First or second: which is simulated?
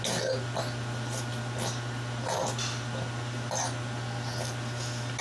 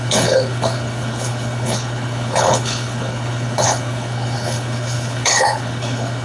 second